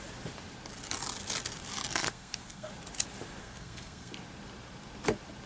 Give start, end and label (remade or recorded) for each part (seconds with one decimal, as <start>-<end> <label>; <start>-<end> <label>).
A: 0.0-2.0 recorded; 2.0-2.7 remade; 2.7-3.4 recorded; 3.4-4.1 remade; 4.1-5.5 recorded